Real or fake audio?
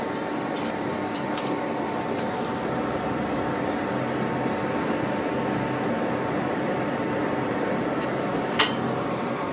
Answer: fake